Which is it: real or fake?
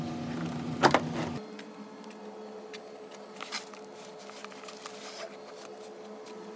real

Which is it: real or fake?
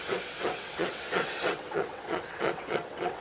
fake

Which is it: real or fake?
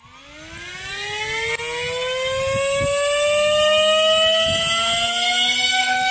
real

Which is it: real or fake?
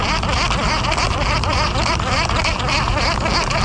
real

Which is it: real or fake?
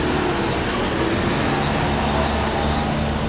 real